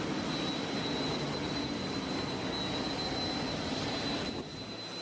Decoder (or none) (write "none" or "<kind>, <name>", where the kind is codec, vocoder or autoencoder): none